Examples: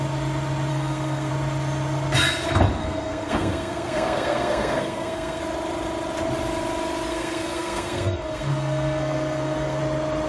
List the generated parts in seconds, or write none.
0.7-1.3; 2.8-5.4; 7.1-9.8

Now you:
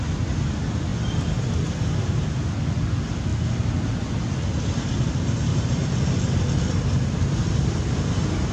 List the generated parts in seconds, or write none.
none

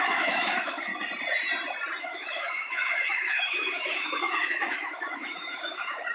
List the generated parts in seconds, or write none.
0.0-0.9; 2.0-6.1